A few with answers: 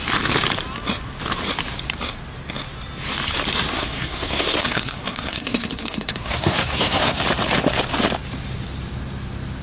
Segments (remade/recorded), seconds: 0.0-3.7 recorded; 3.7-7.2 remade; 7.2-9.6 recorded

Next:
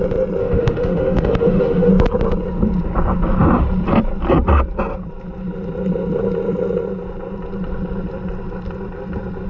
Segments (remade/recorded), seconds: 0.0-0.4 recorded; 0.4-1.9 remade; 1.9-9.5 recorded